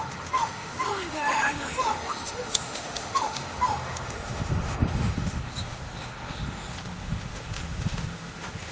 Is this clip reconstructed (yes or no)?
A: yes